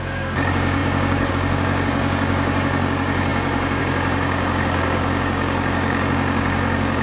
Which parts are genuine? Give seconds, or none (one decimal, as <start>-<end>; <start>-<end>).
none